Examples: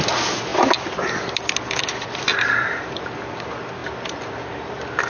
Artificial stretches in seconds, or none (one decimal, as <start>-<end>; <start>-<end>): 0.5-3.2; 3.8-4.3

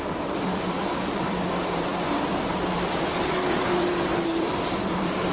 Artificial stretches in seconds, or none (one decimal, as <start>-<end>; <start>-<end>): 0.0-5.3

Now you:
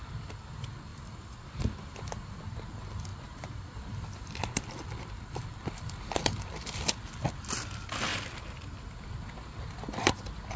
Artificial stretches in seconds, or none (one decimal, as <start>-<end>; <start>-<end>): 0.9-2.4; 3.1-7.3

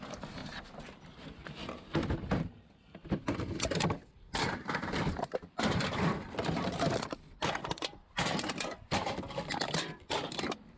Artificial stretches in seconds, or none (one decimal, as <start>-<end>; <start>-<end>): 0.0-0.4; 4.2-10.8

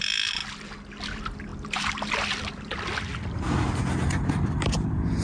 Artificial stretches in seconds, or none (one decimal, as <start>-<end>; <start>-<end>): 0.0-0.4; 1.0-3.1; 4.3-5.2

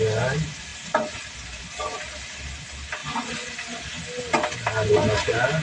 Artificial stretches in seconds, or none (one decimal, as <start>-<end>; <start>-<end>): none

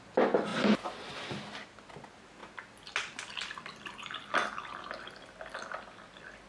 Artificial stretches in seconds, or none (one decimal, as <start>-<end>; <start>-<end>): none